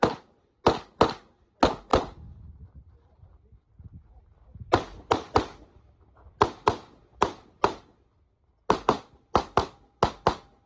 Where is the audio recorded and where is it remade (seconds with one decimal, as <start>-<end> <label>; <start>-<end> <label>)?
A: 0.0-1.9 recorded; 1.9-3.1 remade; 3.1-7.1 recorded; 7.1-7.8 remade; 7.8-10.7 recorded